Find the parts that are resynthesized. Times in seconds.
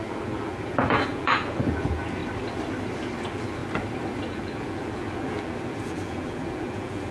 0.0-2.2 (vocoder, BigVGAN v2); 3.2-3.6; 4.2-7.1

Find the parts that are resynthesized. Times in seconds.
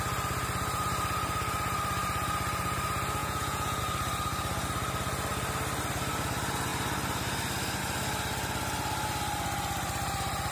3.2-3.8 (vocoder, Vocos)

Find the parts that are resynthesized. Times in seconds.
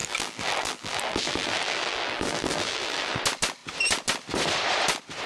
0.0-3.2 (vocoder, BigVGAN v2)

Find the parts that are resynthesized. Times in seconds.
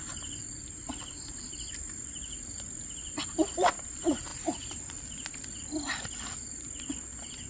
0.0-7.5 (vocoder, BigVGAN v2)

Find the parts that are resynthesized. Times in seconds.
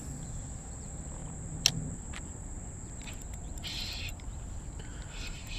none